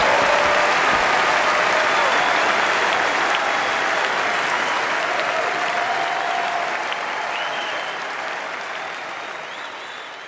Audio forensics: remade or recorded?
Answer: remade